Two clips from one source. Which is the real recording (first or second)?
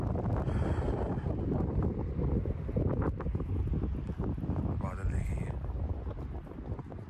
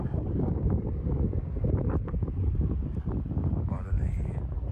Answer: first